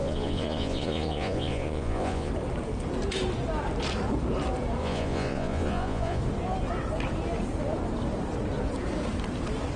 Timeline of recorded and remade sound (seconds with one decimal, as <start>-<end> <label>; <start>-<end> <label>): 0.0-2.3 remade; 2.3-4.8 recorded; 4.8-6.2 remade; 6.2-9.8 recorded